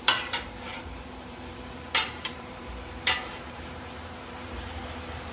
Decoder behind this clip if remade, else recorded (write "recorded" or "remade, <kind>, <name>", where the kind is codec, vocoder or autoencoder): remade, vocoder, BigVGAN v2